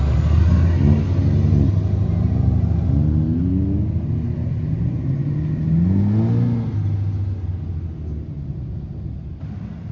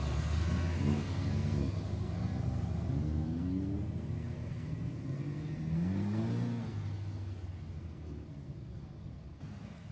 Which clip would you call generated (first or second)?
second